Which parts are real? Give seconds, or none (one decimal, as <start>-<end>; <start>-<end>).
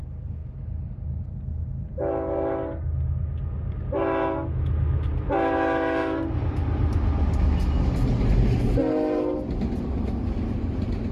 0.0-11.1